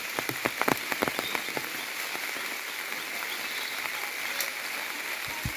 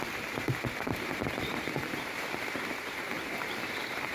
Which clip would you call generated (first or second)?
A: second